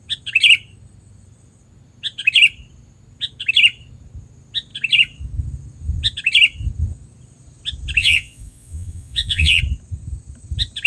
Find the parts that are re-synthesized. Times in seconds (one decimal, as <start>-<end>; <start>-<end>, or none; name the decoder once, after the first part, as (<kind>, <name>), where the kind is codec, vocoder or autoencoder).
8.0-9.6 (vocoder, Vocos)